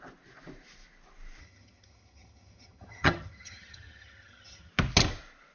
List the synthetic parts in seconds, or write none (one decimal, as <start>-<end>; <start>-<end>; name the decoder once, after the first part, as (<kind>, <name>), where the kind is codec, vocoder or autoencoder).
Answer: 1.4-4.7 (vocoder, HiFi-GAN)